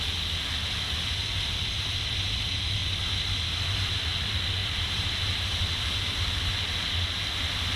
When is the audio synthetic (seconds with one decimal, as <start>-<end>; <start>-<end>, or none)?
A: 4.6-6.5